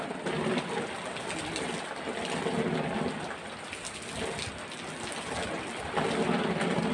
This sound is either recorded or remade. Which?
recorded